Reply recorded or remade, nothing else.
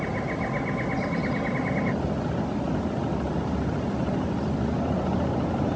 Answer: recorded